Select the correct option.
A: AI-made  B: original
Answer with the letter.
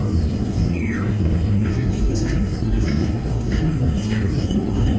A